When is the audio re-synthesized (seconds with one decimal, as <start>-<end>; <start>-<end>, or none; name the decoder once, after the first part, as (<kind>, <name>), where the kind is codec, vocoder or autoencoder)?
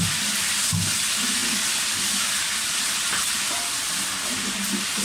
none